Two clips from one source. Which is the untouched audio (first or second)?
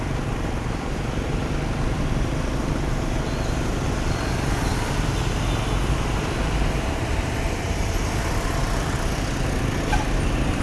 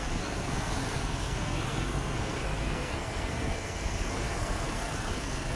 first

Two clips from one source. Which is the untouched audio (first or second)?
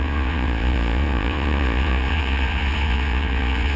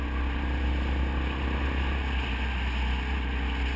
second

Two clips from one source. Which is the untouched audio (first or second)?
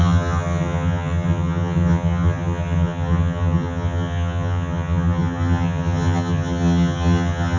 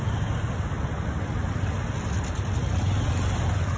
second